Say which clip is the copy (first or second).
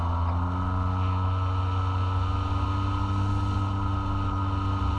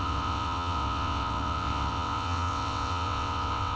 second